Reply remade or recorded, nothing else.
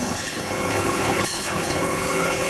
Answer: remade